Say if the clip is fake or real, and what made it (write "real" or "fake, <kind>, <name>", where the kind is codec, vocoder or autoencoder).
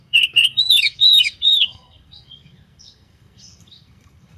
fake, codec, SNAC